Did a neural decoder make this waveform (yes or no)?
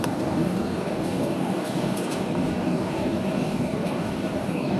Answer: yes